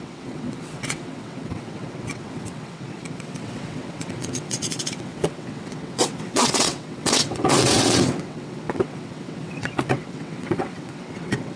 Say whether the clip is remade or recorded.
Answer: remade